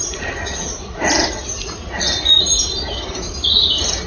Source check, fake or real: real